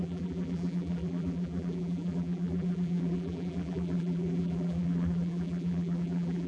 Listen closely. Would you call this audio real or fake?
fake